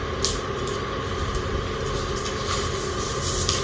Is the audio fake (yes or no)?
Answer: no